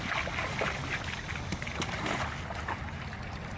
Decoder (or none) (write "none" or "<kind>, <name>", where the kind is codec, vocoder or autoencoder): none